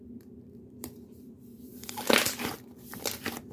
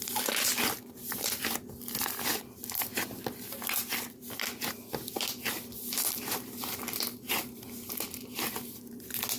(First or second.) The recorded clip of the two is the second